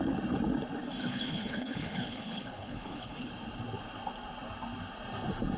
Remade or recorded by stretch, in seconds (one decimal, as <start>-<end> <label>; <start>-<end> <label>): 0.0-1.0 recorded; 1.0-3.3 remade; 3.3-5.6 recorded